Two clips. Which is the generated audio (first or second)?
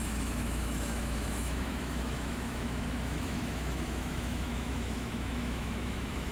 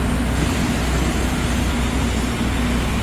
first